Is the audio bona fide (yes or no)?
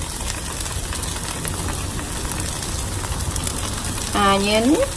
yes